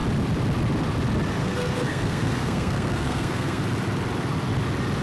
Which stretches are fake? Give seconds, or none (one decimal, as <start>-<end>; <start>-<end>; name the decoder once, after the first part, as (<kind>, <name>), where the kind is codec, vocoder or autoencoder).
1.4-3.6 (codec, SNAC)